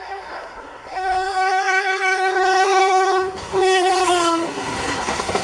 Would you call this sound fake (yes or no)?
yes